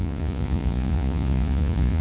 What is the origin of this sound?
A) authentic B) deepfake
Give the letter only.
B